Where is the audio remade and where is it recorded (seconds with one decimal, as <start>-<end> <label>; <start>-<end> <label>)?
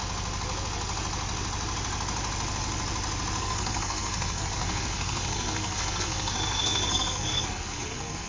0.0-3.4 recorded; 3.4-8.3 remade